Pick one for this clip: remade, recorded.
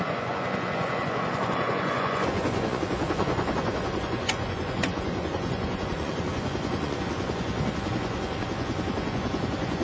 remade